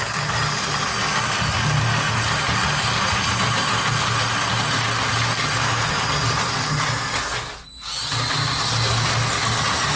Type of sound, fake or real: real